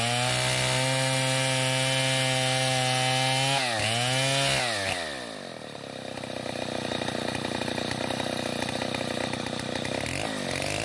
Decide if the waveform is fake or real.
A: real